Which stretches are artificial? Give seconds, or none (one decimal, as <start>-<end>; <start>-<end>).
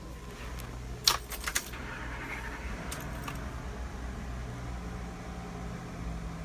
1.5-2.0